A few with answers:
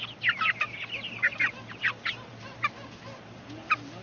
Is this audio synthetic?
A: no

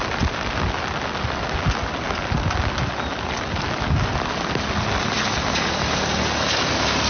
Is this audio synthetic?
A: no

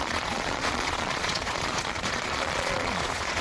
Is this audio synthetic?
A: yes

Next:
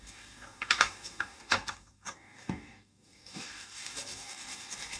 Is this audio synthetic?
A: yes